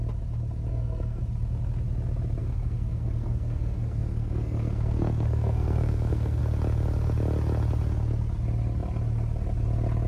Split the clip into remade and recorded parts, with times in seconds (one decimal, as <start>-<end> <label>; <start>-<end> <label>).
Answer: 0.0-0.7 recorded; 0.7-1.2 remade; 1.2-2.4 recorded; 2.4-6.4 remade; 6.4-10.1 recorded